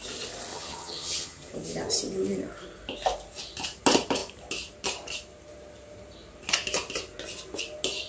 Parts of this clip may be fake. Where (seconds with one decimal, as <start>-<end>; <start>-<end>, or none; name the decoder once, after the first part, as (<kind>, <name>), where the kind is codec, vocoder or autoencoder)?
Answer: 0.5-1.5 (vocoder, HiFi-GAN)